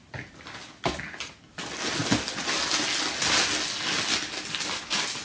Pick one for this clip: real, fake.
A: real